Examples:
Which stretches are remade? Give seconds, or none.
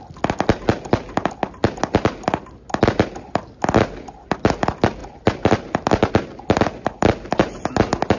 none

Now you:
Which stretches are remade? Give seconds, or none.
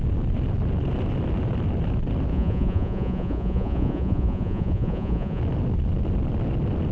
2.3-5.4 (vocoder, Vocos)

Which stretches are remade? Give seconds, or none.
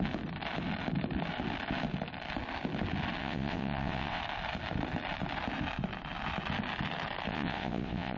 3.2-4.2 (vocoder, WaveNeXt); 7.3-8.2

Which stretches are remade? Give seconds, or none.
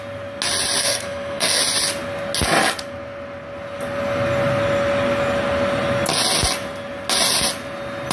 0.8-1.6 (codec, SNAC)